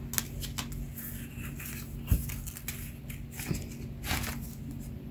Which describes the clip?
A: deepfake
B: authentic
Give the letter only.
B